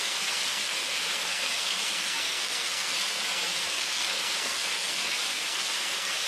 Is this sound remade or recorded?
remade